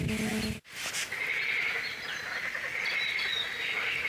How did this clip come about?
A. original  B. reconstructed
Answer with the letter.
A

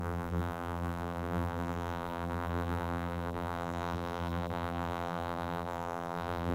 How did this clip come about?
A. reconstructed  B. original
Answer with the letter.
A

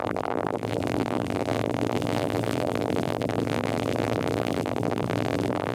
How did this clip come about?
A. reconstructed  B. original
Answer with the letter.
A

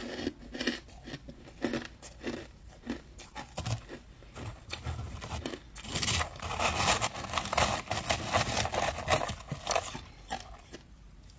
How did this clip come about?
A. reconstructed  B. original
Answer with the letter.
B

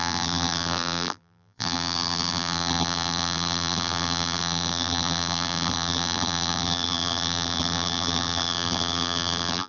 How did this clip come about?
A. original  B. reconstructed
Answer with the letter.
B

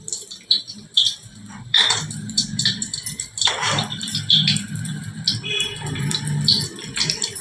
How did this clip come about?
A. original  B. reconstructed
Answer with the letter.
B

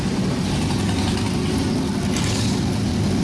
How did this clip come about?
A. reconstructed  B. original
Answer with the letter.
B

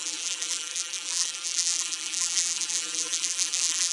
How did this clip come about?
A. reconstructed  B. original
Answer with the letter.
A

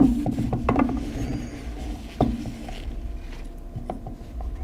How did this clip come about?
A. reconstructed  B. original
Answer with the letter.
B